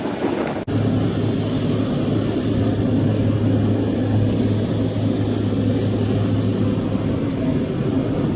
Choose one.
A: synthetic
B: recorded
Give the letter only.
B